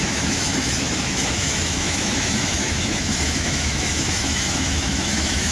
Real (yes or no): no